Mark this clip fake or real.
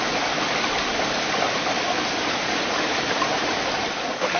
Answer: real